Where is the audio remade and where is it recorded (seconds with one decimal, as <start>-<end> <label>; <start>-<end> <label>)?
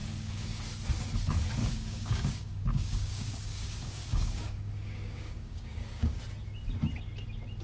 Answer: 0.0-0.6 remade; 0.6-1.6 recorded; 1.6-6.2 remade; 6.2-7.6 recorded